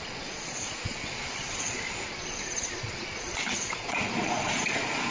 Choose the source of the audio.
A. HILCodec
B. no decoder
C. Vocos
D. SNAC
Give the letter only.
C